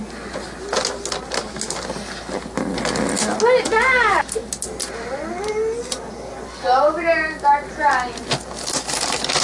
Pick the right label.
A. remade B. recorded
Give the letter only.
B